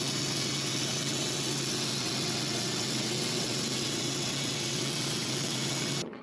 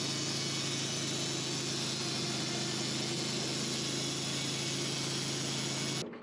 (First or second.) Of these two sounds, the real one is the second